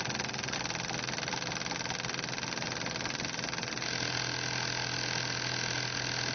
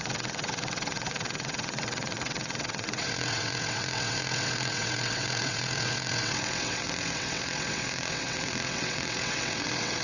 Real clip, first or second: first